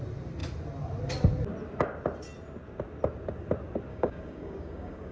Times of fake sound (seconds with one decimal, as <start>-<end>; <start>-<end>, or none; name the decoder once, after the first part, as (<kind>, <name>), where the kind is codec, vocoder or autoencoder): 3.9-5.1 (codec, DAC)